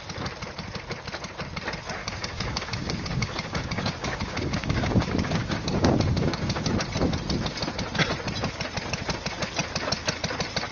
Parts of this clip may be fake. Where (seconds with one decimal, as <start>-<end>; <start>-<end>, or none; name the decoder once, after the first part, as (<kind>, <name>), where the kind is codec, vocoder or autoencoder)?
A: 2.0-6.7 (codec, DAC)